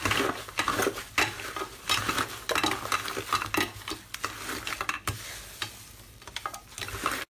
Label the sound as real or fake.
real